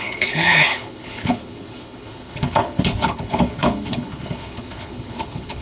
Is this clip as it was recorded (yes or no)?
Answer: no